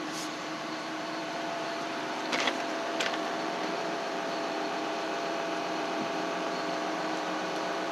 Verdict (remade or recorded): remade